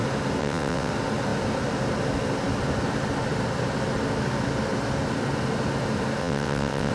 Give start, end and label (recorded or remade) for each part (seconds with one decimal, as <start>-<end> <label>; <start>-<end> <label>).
0.0-0.4 recorded; 0.4-0.9 remade; 0.9-6.2 recorded; 6.2-6.9 remade